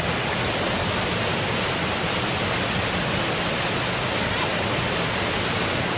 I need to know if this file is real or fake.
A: real